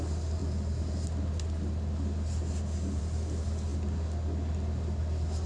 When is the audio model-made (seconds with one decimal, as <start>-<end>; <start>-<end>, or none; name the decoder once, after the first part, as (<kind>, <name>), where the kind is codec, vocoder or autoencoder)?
none